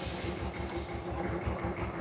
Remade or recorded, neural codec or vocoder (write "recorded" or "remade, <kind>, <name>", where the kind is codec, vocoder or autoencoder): recorded